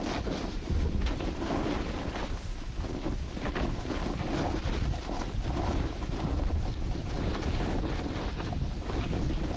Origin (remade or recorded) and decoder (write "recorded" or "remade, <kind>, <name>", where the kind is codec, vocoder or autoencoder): recorded